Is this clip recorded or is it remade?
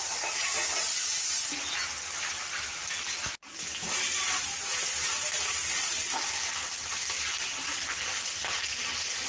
recorded